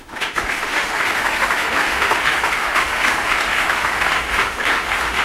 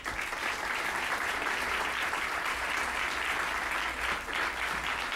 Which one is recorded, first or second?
second